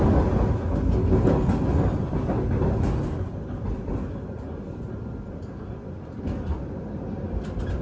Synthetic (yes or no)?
no